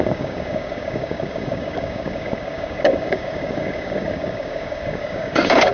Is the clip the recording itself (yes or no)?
no